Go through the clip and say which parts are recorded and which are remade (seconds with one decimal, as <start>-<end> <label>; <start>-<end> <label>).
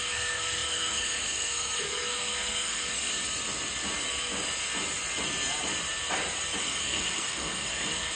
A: 0.0-3.1 remade; 3.1-6.6 recorded; 6.6-8.2 remade